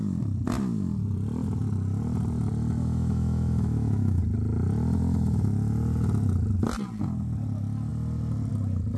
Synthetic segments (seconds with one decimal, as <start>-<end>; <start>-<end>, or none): 2.8-4.2